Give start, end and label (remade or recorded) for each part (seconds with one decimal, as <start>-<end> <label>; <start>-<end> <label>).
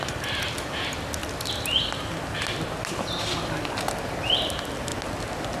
0.0-5.6 recorded